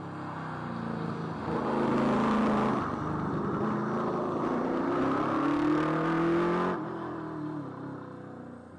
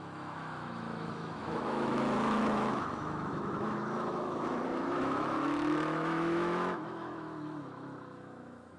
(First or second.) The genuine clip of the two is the first